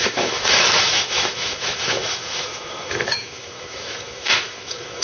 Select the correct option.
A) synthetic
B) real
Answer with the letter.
A